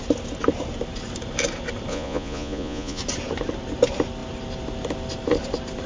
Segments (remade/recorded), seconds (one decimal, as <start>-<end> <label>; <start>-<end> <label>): 0.0-1.9 recorded; 1.9-3.0 remade; 3.0-5.9 recorded